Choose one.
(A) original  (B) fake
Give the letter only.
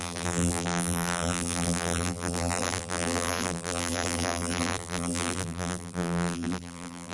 B